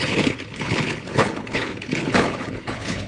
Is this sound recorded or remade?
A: remade